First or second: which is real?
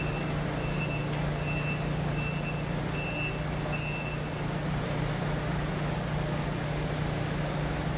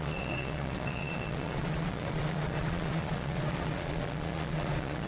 first